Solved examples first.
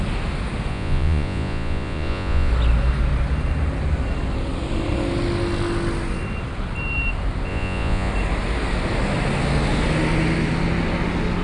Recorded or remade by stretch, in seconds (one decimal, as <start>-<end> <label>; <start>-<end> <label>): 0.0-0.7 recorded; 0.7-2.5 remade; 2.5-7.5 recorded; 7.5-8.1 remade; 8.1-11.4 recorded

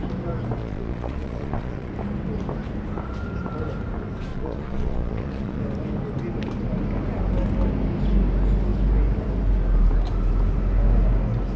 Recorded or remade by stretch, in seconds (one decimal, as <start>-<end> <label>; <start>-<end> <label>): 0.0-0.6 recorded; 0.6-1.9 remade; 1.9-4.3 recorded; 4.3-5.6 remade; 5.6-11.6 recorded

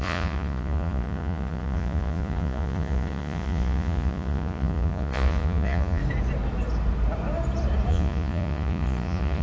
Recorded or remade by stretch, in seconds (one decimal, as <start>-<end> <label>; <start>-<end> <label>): 0.0-6.0 remade; 6.0-7.9 recorded; 7.9-9.4 remade